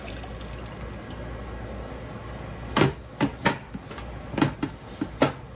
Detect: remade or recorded recorded